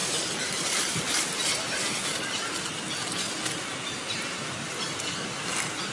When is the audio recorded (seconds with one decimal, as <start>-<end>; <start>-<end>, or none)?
0.0-5.9